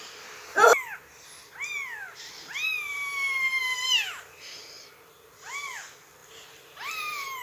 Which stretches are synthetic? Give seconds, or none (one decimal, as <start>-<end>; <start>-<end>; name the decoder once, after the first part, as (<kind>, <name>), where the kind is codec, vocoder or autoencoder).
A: 2.9-5.5 (vocoder, BigVGAN v2); 6.2-6.9